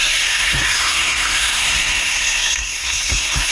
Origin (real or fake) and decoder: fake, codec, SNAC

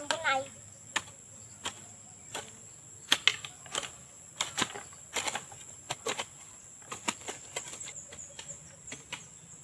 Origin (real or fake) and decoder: real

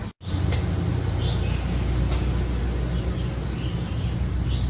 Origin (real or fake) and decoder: real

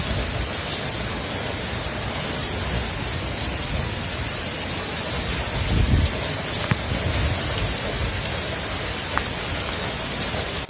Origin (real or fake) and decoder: real